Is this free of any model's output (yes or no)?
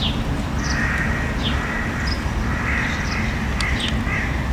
yes